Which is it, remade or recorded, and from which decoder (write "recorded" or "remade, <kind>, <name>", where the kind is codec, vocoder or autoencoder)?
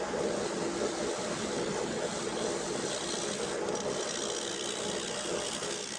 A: recorded